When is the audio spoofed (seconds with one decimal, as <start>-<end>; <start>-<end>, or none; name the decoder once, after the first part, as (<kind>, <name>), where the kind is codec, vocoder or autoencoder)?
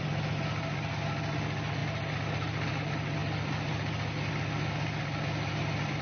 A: none